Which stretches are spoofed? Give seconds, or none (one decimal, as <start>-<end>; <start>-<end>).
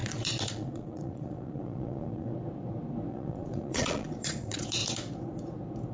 0.0-2.3; 3.1-4.8